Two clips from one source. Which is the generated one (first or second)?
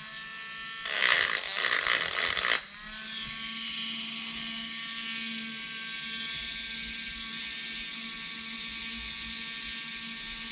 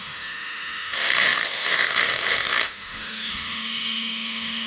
second